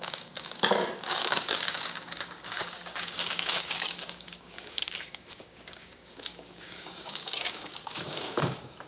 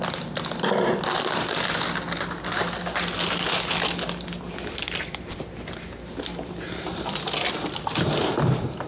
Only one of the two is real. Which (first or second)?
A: second